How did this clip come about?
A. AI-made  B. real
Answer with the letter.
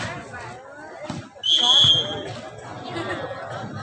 B